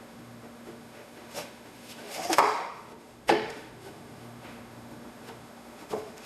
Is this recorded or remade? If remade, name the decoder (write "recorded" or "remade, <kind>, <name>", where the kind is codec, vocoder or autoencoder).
remade, autoencoder, DAC-VAE